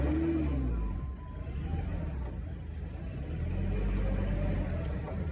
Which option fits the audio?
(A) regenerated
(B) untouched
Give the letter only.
B